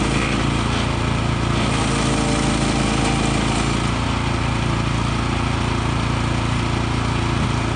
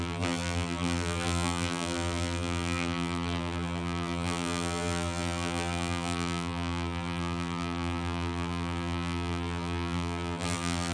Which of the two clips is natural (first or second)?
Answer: first